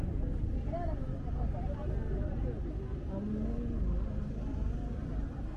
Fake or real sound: real